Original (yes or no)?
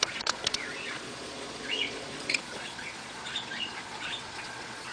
no